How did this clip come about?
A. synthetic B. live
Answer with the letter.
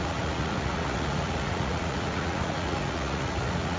A